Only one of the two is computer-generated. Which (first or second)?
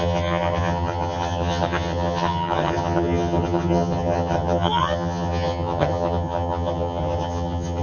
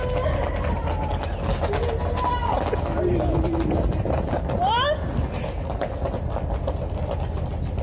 first